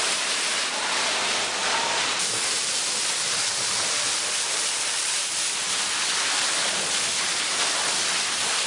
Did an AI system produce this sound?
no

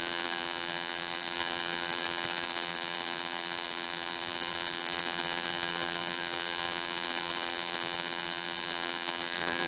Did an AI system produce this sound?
yes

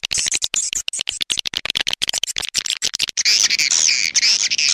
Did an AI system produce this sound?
no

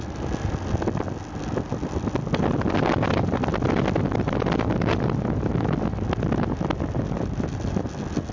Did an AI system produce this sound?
no